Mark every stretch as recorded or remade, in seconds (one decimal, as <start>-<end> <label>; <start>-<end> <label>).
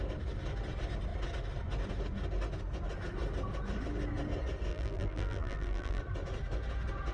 0.0-4.7 recorded; 4.7-6.0 remade; 6.0-7.1 recorded